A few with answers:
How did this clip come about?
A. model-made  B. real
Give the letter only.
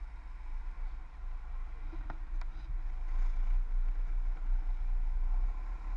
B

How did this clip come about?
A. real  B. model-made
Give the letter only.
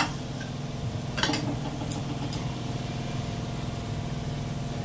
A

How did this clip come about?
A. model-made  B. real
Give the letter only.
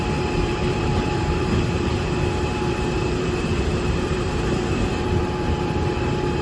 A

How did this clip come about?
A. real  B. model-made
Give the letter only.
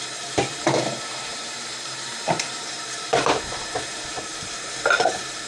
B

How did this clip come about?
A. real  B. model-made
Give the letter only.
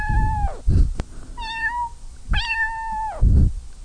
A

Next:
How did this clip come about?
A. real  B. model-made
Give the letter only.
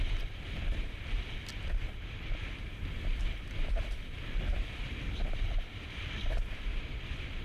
B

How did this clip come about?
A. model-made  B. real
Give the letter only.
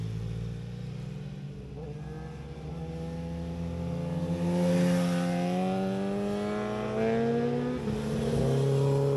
B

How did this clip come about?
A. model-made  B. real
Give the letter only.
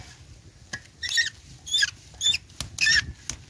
B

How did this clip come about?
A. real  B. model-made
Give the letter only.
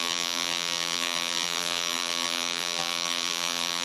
B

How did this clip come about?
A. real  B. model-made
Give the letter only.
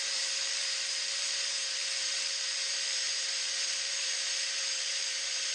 B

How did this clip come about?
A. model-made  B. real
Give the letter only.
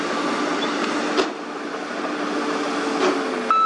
B